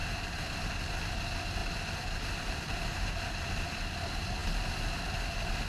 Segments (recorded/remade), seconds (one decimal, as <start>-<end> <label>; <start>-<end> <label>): 0.0-1.6 recorded; 1.6-3.0 remade; 3.0-5.7 recorded